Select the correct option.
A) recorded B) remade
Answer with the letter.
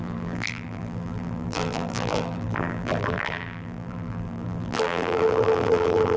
B